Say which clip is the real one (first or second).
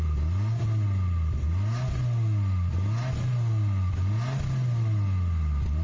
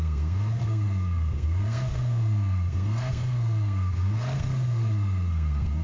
first